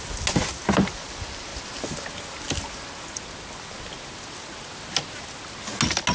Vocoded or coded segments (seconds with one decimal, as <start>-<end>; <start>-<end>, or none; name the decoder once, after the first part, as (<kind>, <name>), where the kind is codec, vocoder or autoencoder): none